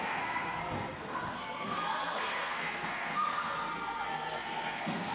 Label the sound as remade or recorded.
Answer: remade